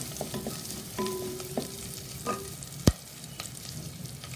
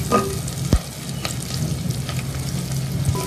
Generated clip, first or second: first